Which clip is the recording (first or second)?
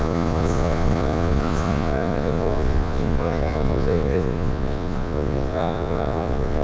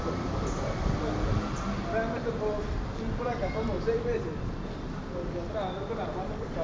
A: second